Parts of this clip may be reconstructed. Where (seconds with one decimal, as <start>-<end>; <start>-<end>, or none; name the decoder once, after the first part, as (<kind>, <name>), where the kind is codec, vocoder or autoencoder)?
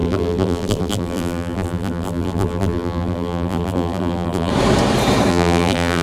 0.0-4.5 (vocoder, BigVGAN v2); 5.3-6.0